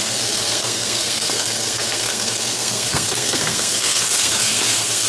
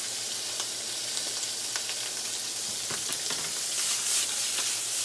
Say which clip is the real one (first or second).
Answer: second